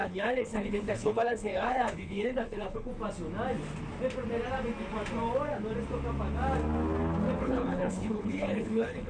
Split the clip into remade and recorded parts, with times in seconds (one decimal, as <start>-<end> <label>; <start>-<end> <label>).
0.0-2.9 remade; 2.9-7.4 recorded; 7.4-9.1 remade

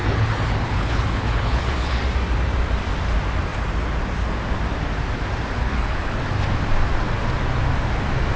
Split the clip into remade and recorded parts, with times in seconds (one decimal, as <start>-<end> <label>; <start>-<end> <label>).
0.0-2.0 remade; 2.0-5.6 recorded; 5.6-6.2 remade; 6.2-8.4 recorded

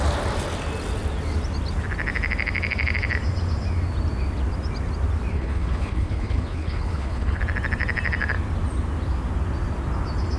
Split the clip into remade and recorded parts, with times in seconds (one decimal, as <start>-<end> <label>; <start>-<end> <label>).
0.0-5.3 recorded; 5.3-7.4 remade; 7.4-10.4 recorded

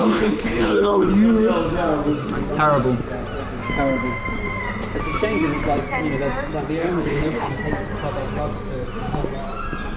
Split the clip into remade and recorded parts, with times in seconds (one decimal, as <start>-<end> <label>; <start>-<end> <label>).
0.0-1.1 remade; 1.1-6.8 recorded; 6.8-7.5 remade; 7.5-10.0 recorded

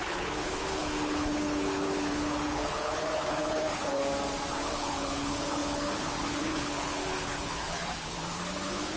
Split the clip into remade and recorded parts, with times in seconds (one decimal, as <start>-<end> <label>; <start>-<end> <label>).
0.0-4.0 remade; 4.0-4.5 recorded; 4.5-9.0 remade

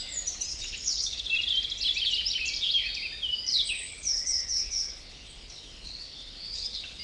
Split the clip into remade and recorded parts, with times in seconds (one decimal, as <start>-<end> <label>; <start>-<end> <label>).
0.0-0.5 recorded; 0.5-1.3 remade; 1.3-3.5 recorded; 3.5-7.0 remade